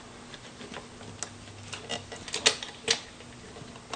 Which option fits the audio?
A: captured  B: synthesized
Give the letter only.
A